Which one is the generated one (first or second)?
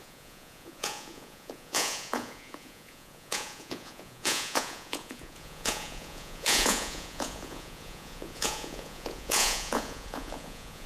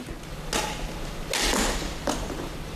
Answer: first